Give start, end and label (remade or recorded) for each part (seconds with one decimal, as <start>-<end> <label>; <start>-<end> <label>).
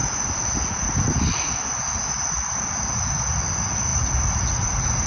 0.0-5.1 recorded